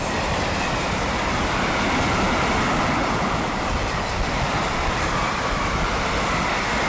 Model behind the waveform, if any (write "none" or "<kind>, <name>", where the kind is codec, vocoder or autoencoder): none